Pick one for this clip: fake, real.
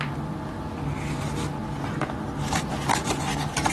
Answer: real